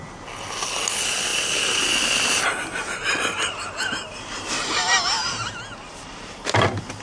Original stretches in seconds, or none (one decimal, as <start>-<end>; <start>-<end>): 0.0-7.0